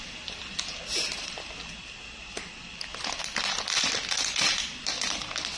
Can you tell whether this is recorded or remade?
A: recorded